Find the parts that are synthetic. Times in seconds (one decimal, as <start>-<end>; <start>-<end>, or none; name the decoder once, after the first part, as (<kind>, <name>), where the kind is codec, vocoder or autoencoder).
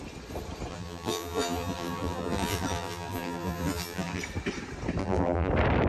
0.7-4.2 (vocoder, BigVGAN v2); 5.0-5.5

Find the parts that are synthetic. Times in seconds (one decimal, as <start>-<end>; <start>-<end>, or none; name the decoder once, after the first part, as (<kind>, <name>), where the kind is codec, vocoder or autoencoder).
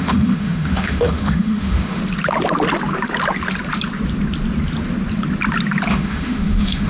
0.0-2.0 (autoencoder, DAC-VAE); 5.9-6.9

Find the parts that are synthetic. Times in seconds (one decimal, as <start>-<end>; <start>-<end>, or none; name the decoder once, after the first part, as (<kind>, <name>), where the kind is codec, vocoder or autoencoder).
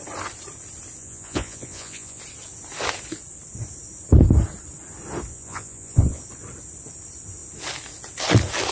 1.0-2.2 (vocoder, Vocos); 5.3-6.2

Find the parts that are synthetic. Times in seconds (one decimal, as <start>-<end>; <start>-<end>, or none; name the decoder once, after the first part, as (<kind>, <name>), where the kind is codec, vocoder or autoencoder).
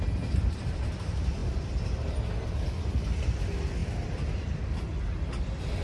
none